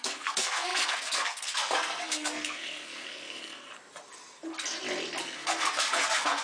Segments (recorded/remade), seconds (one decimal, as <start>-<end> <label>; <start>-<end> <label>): 0.0-3.7 remade; 3.7-5.2 recorded; 5.2-6.4 remade

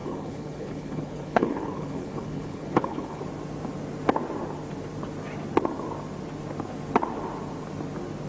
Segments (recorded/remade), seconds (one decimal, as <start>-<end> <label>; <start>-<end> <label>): 0.0-3.2 remade; 3.2-8.3 recorded

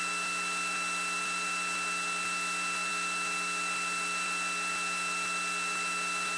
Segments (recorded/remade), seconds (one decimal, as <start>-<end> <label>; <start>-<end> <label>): 0.0-6.4 recorded

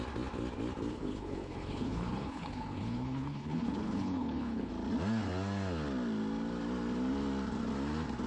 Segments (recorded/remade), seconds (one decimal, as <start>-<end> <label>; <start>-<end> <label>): 0.0-0.9 recorded; 0.9-4.7 remade; 4.7-8.3 recorded

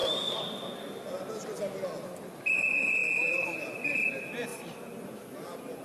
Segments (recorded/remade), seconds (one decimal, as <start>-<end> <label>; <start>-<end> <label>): 0.0-5.8 recorded

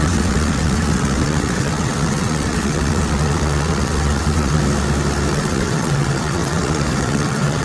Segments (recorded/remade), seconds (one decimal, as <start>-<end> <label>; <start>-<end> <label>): 0.0-4.6 remade; 4.6-5.3 recorded; 5.3-7.6 remade

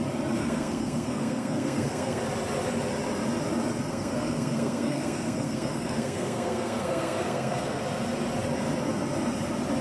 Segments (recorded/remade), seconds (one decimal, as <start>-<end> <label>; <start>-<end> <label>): 0.0-0.4 recorded; 0.4-2.2 remade; 2.2-3.9 recorded; 3.9-7.8 remade; 7.8-9.8 recorded